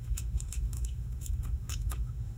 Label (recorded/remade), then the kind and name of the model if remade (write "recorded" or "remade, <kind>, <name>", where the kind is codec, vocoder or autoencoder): remade, autoencoder, DAC-VAE